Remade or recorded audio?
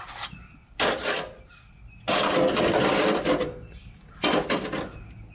recorded